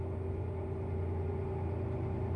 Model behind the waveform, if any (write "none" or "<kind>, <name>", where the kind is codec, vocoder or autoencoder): none